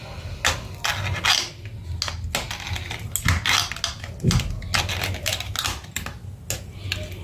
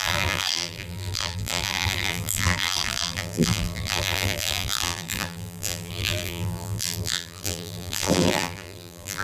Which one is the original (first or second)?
first